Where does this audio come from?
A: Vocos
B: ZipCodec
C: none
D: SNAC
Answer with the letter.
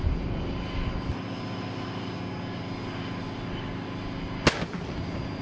C